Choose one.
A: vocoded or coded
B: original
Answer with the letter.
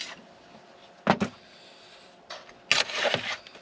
B